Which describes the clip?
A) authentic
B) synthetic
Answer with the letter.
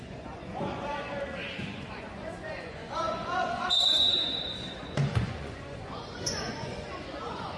B